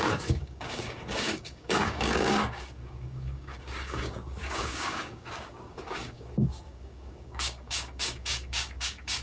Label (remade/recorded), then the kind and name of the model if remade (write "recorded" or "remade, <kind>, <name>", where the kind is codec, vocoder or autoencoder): remade, codec, DAC